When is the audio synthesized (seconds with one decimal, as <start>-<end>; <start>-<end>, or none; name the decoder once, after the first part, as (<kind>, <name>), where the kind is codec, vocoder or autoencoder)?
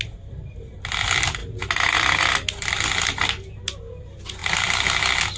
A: none